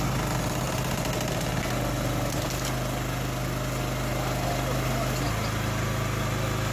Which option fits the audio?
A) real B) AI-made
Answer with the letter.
A